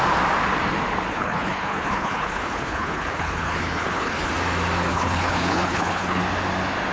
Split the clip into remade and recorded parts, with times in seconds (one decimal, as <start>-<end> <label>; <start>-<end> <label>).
0.0-1.1 recorded; 1.1-4.3 remade; 4.3-4.9 recorded; 4.9-6.2 remade; 6.2-6.9 recorded